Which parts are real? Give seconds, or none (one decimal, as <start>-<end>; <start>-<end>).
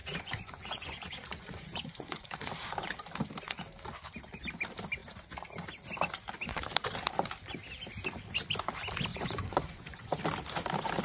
2.5-9.1; 10.2-11.0